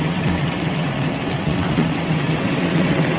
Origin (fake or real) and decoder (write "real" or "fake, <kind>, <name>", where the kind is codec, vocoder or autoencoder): fake, vocoder, WaveNeXt